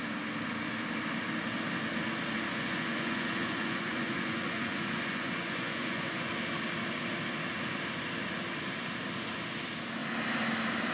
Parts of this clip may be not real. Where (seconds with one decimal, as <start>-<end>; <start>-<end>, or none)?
2.5-6.3